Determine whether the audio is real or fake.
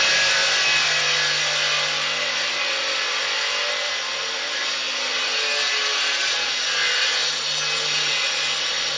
real